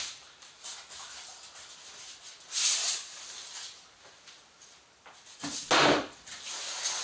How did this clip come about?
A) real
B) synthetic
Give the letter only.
A